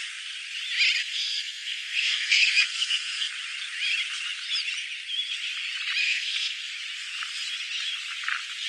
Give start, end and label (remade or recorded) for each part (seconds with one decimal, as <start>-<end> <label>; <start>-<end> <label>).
0.0-1.0 recorded; 1.0-3.3 remade; 3.3-6.0 recorded; 6.0-6.7 remade; 6.7-8.7 recorded